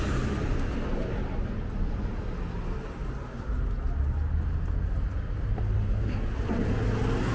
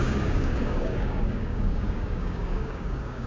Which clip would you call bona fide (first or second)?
first